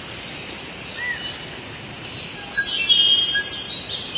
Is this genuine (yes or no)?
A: yes